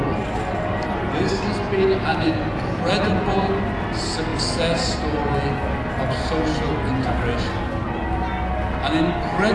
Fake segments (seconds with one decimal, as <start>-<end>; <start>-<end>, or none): 2.1-2.9

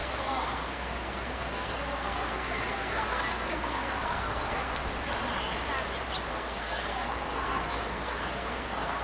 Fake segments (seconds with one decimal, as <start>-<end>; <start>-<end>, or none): 0.0-4.8; 6.3-9.0

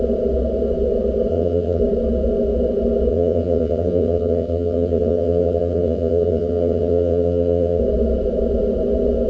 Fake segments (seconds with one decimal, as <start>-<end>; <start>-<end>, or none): 1.3-1.8; 3.1-7.8

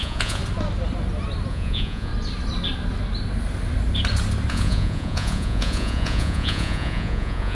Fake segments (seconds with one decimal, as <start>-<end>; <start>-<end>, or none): 0.0-0.4; 1.5-2.1; 4.5-7.5

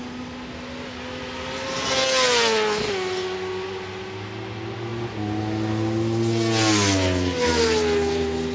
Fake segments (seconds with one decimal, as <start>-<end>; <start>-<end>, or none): none

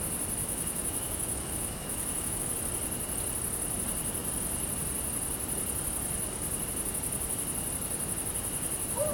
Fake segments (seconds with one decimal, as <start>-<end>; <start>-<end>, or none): 0.4-2.5